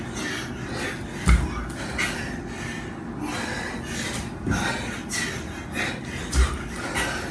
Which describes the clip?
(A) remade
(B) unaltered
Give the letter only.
B